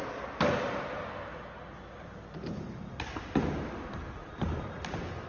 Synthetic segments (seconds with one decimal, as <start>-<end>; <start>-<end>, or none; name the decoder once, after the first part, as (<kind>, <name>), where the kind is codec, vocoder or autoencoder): none